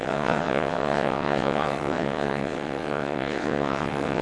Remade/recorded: remade